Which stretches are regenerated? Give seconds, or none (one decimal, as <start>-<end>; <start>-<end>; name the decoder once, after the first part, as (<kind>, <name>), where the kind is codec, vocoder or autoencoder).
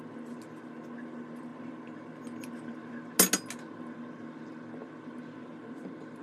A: none